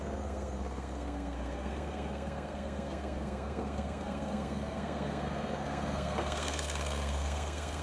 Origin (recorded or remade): remade